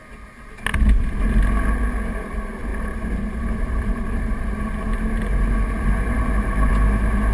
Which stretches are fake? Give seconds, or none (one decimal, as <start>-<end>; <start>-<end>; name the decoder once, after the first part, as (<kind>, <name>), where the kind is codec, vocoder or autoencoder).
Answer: 2.7-6.7 (vocoder, BigVGAN v2)